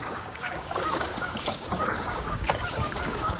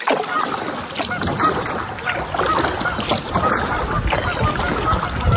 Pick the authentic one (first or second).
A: second